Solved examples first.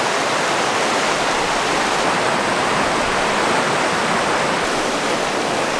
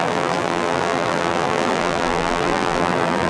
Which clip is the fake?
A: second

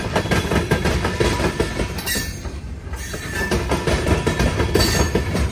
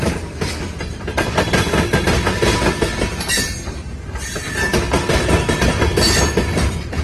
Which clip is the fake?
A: first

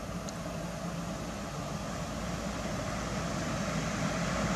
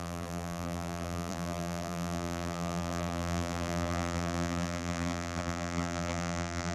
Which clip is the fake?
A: second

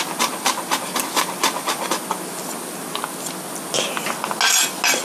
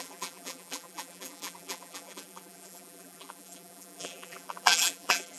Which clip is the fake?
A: second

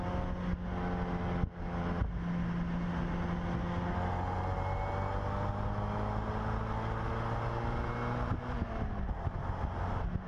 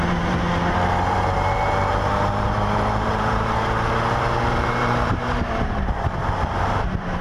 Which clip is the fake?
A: second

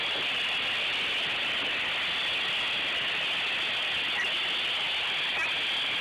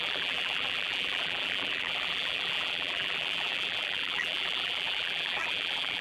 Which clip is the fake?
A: second